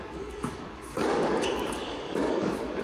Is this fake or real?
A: fake